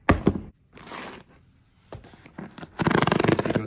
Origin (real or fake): real